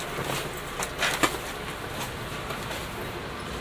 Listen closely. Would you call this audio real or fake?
real